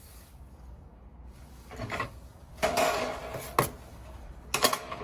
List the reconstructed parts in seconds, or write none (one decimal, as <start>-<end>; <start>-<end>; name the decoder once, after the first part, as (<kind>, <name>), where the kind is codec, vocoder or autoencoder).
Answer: 0.0-3.2 (codec, DAC); 3.9-5.0